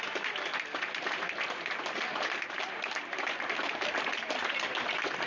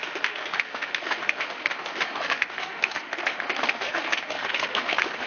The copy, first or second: second